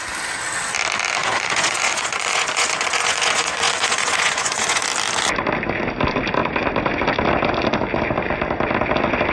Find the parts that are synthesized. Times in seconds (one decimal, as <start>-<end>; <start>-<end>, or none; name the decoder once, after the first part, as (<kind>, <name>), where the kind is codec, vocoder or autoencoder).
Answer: 1.2-4.8 (vocoder, Vocos)